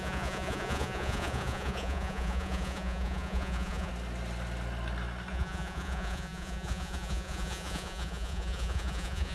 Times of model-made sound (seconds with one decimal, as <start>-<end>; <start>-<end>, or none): 0.0-3.9; 5.3-9.3